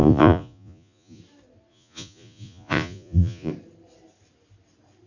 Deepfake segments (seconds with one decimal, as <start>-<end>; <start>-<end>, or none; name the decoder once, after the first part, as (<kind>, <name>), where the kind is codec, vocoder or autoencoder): 0.0-1.2 (vocoder, Vocos); 1.7-3.5